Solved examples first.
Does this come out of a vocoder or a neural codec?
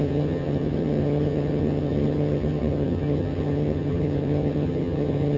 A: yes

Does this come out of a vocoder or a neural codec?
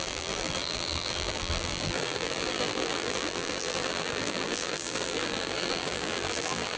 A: yes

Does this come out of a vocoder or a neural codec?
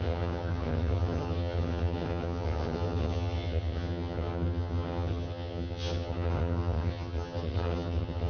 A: yes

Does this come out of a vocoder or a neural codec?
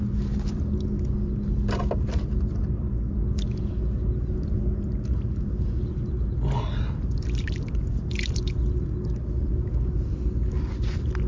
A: no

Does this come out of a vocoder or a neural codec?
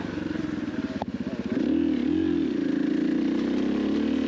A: no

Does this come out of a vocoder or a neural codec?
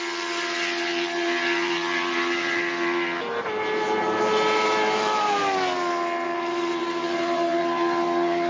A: yes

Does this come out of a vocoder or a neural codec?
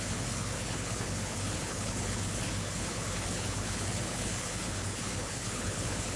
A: yes